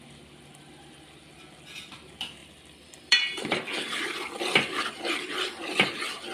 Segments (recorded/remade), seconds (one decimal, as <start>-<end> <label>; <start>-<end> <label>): 0.0-2.4 recorded; 2.4-4.9 remade; 4.9-6.3 recorded